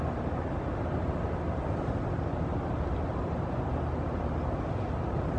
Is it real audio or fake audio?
real